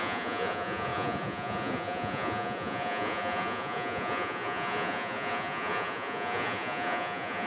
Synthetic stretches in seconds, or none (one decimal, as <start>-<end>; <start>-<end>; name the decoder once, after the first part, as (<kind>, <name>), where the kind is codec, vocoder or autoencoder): 0.0-7.5 (vocoder, Vocos)